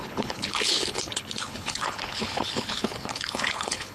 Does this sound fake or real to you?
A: fake